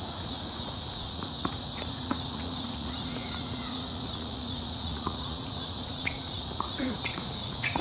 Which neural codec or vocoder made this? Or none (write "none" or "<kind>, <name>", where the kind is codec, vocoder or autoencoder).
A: vocoder, Vocos